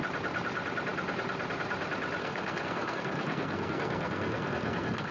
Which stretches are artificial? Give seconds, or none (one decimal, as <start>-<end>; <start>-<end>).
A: 2.2-5.1